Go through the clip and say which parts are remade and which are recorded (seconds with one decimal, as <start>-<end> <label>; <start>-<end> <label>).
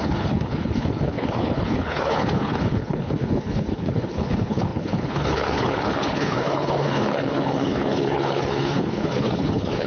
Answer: 0.0-9.9 remade